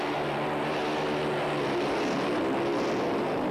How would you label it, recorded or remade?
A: recorded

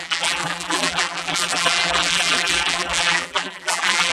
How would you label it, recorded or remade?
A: remade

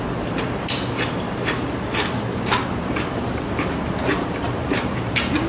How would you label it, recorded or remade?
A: remade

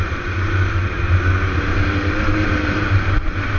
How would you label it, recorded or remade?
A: remade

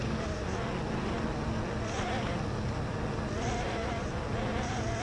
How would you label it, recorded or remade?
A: recorded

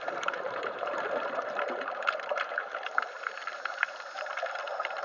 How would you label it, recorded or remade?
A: remade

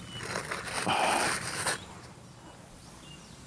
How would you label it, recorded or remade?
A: recorded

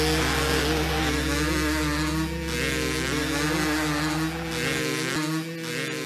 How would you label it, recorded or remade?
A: recorded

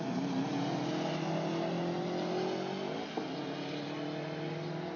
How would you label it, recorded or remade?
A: recorded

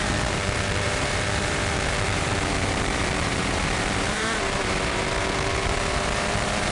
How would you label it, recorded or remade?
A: remade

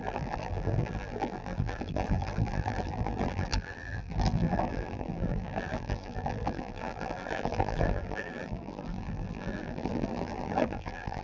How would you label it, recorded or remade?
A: remade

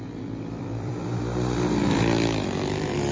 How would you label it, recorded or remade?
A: remade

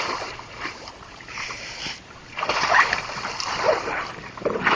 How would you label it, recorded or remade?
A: remade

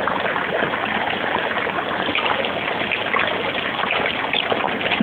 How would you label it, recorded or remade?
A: remade